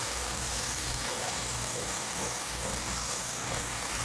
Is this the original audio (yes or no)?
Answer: no